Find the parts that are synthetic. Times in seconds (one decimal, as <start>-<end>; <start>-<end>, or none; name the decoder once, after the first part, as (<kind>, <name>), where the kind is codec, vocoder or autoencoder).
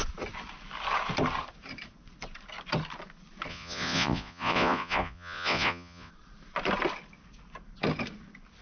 3.5-6.1 (vocoder, Vocos)